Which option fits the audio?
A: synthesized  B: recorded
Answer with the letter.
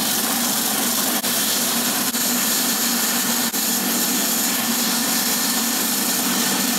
B